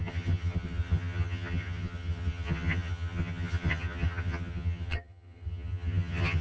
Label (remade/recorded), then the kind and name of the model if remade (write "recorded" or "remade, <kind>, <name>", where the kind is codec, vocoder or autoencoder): remade, vocoder, HiFi-GAN